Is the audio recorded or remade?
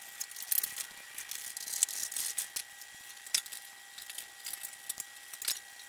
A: recorded